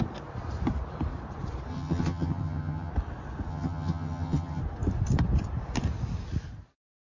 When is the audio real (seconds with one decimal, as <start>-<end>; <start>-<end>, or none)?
0.0-1.7; 2.9-3.5; 4.6-7.1